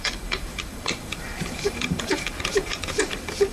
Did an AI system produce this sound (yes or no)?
yes